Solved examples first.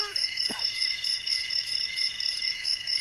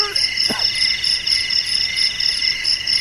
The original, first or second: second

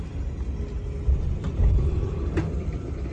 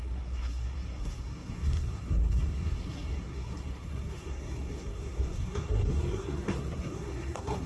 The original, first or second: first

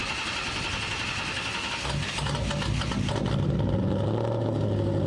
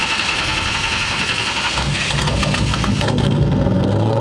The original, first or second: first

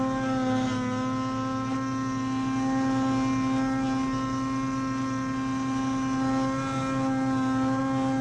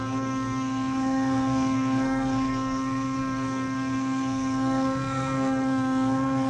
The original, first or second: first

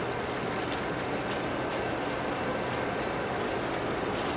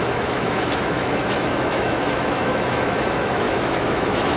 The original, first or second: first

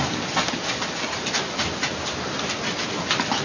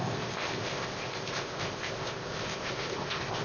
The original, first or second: first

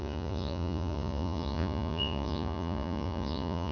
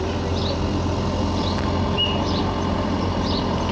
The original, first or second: second